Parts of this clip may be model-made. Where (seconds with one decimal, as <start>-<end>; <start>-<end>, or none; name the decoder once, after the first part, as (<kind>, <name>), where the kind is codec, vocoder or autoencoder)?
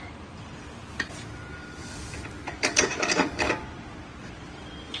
1.5-2.0 (codec, DAC); 2.5-3.5